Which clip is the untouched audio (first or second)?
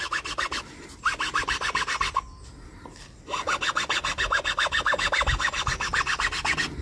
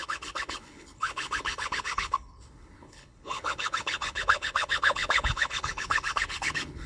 first